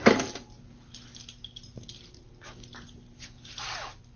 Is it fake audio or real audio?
real